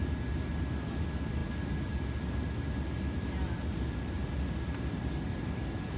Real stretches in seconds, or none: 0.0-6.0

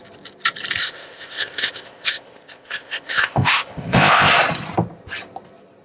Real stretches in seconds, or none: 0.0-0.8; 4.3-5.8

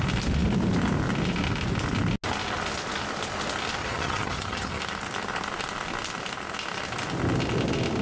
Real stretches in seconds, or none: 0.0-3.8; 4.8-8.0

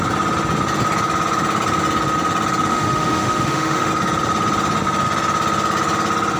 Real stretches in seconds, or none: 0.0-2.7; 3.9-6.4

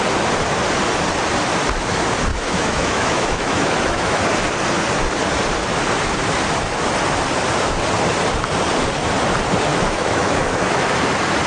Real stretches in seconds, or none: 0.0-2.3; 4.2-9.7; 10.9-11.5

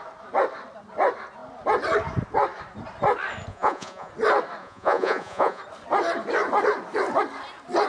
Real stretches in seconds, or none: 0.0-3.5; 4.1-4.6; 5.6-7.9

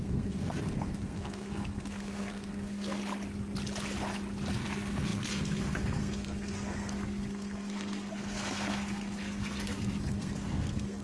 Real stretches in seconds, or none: 3.0-4.5